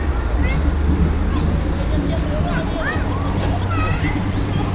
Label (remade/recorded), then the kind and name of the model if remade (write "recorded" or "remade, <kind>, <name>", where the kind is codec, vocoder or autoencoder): recorded